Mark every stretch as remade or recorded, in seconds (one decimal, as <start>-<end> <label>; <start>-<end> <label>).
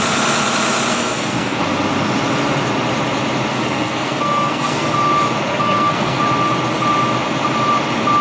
0.0-0.9 recorded; 0.9-1.6 remade; 1.6-3.5 recorded; 3.5-4.9 remade; 4.9-5.5 recorded; 5.5-6.2 remade; 6.2-8.2 recorded